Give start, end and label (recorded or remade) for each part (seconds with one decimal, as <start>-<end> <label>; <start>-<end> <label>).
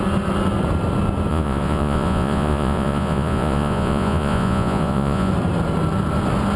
0.0-1.3 recorded; 1.3-5.3 remade; 5.3-6.6 recorded